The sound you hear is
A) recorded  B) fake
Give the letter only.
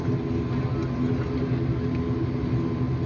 A